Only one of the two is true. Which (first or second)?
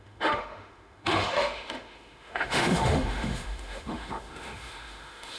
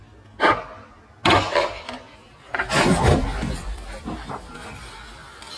second